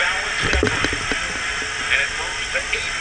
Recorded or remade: recorded